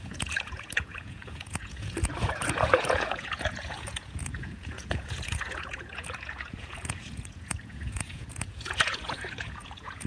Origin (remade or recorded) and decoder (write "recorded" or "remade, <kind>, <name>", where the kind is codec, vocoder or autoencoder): remade, vocoder, Vocos